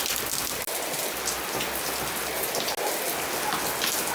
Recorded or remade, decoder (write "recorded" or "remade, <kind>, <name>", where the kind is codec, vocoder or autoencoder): recorded